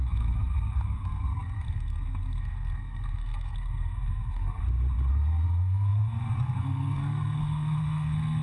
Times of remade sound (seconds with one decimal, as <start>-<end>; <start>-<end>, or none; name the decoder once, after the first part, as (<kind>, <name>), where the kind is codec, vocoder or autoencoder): 0.0-4.6 (codec, SNAC); 5.1-8.4